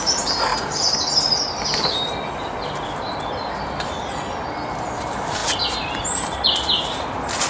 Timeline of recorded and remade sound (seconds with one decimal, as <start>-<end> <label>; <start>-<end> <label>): 0.0-7.5 recorded

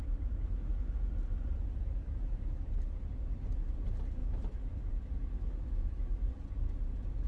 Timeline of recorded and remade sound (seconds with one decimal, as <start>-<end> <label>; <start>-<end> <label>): 0.0-1.1 remade; 1.1-2.0 recorded; 2.0-2.7 remade; 2.7-4.2 recorded; 4.2-6.3 remade; 6.3-7.3 recorded

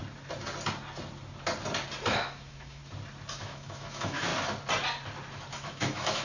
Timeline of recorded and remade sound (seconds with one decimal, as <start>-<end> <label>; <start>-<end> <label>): 0.0-2.1 recorded; 2.1-2.8 remade; 2.8-3.4 recorded; 3.4-4.3 remade; 4.3-5.5 recorded; 5.5-6.2 remade